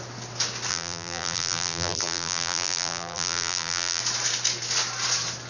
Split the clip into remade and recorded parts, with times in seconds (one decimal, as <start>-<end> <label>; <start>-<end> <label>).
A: 0.0-0.7 recorded; 0.7-4.0 remade; 4.0-5.5 recorded